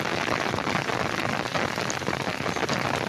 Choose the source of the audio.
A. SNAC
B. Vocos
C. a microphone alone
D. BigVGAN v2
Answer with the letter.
D